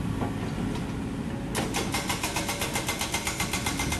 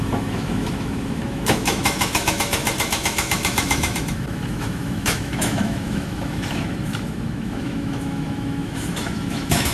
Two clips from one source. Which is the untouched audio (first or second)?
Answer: first